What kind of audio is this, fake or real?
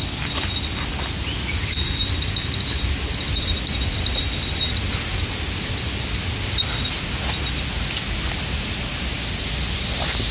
real